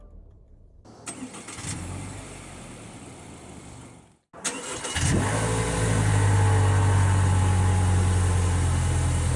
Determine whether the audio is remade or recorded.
recorded